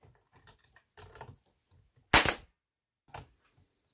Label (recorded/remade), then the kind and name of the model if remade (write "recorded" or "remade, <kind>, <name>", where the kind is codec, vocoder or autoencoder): recorded